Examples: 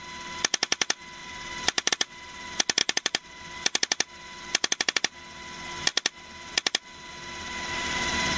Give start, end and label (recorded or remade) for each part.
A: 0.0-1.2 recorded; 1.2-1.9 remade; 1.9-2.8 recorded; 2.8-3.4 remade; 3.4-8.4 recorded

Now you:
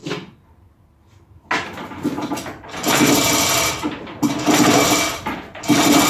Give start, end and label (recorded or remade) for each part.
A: 0.0-6.1 recorded

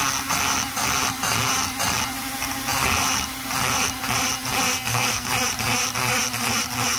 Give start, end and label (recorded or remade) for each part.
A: 0.0-4.7 recorded; 4.7-5.3 remade; 5.3-7.0 recorded

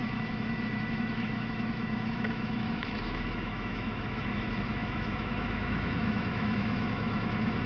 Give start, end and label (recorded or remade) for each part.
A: 0.0-7.7 remade

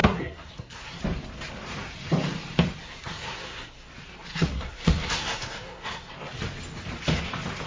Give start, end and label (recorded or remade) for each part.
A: 0.0-1.0 remade; 1.0-2.8 recorded; 2.8-3.9 remade; 3.9-4.3 recorded; 4.3-6.1 remade; 6.1-7.7 recorded

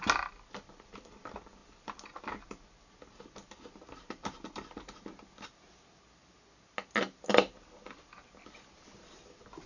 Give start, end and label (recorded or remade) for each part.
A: 0.0-9.7 recorded